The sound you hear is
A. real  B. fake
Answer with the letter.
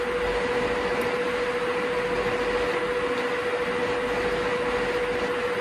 A